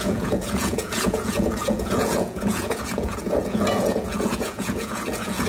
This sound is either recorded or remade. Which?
remade